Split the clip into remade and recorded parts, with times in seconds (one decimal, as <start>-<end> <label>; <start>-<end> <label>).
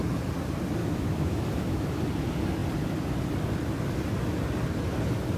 0.0-0.8 recorded; 0.8-2.0 remade; 2.0-5.4 recorded